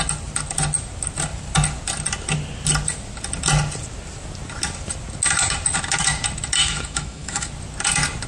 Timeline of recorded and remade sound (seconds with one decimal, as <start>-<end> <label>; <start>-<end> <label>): 0.0-6.6 recorded; 6.6-7.5 remade; 7.5-8.3 recorded